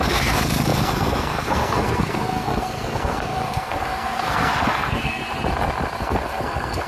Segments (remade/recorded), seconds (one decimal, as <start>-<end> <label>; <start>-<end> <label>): 0.0-5.2 remade; 5.2-6.0 recorded; 6.0-6.9 remade